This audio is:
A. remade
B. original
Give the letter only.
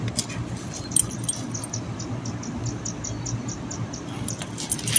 B